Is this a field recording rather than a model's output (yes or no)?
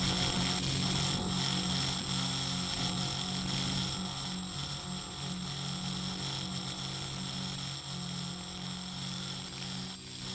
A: yes